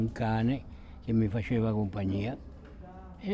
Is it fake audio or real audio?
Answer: real